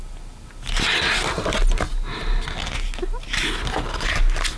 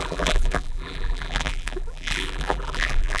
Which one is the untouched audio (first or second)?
first